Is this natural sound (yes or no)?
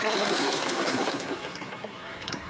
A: no